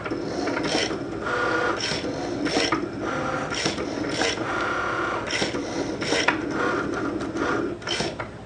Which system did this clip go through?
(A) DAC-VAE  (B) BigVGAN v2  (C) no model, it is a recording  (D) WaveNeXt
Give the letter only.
C